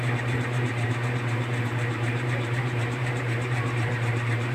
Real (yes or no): no